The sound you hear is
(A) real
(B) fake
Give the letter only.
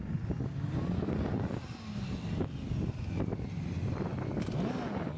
A